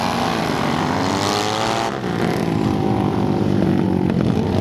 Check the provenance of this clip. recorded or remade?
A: recorded